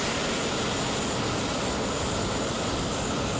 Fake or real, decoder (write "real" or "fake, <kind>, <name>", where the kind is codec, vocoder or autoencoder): real